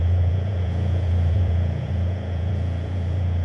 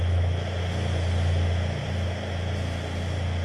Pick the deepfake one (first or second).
first